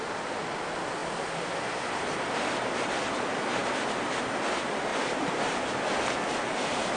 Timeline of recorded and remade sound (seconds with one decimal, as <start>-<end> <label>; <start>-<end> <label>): 0.0-4.9 recorded; 4.9-5.8 remade; 5.8-7.0 recorded